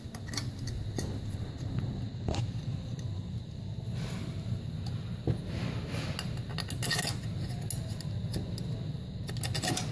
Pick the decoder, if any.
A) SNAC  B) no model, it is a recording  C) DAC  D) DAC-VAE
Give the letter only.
B